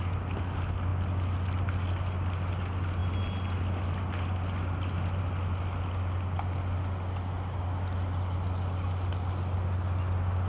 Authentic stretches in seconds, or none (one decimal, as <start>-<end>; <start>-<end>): 0.0-10.5